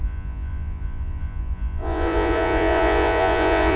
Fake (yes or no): yes